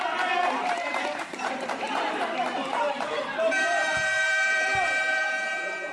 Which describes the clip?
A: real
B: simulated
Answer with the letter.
B